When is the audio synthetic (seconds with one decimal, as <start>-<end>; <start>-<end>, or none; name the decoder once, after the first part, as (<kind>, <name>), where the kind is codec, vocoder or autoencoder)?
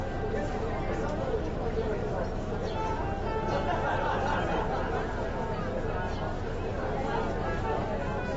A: none